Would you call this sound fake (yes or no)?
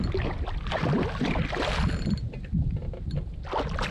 no